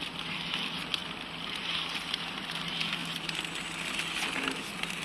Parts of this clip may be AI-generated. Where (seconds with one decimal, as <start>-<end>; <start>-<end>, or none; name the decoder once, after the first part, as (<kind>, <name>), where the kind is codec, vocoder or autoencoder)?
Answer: none